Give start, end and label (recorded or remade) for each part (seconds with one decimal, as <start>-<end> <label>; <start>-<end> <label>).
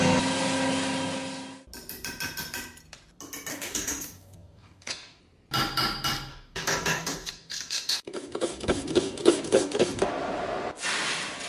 0.0-3.5 recorded; 3.5-5.2 remade; 5.2-6.3 recorded; 6.3-10.1 remade; 10.1-11.5 recorded